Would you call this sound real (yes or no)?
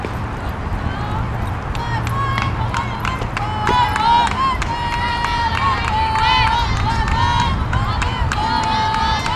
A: yes